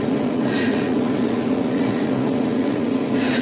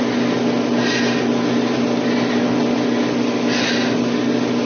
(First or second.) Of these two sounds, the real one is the second